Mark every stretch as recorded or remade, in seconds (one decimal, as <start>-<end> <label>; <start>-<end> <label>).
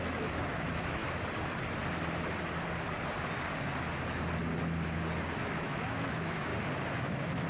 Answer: 0.0-1.0 remade; 1.0-5.4 recorded; 5.4-6.5 remade; 6.5-7.0 recorded; 7.0-7.5 remade